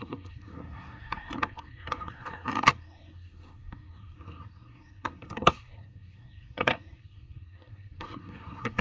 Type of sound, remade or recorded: remade